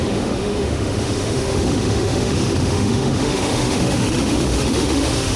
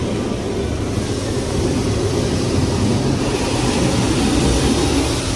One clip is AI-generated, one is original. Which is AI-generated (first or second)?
first